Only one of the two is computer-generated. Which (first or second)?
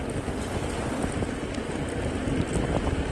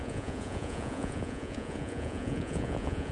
second